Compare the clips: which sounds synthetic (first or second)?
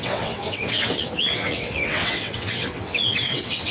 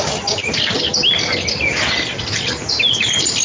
first